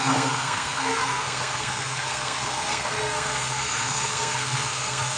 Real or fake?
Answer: fake